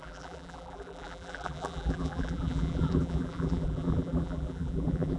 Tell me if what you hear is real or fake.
fake